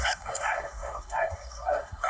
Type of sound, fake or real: fake